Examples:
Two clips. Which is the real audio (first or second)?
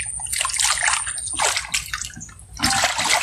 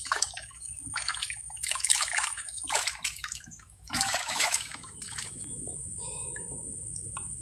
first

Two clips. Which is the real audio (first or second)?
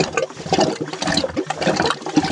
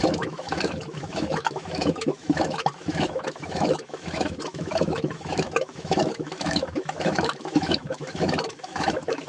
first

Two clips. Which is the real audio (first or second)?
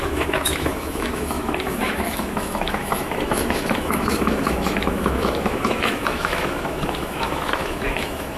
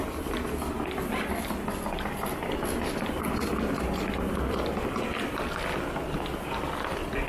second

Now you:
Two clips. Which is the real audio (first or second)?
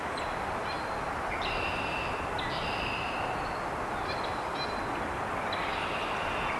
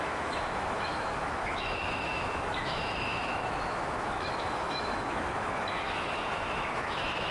first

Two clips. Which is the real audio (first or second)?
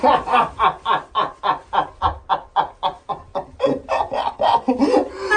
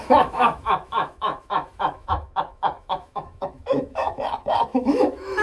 first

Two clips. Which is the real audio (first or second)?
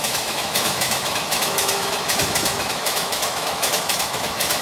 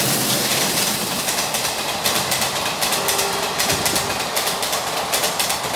second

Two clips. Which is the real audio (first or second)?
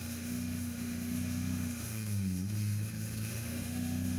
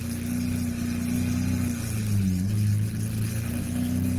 second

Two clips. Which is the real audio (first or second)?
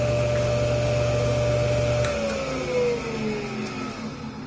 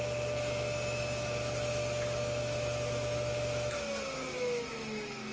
first